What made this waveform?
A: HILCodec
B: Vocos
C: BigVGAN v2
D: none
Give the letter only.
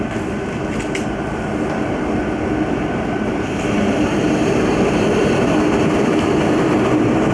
D